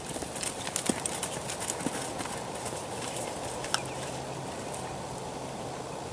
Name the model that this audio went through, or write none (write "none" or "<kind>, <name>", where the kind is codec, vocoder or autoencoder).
none